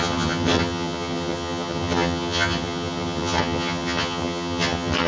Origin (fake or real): fake